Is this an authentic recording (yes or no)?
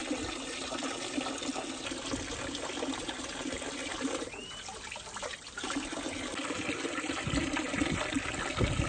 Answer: yes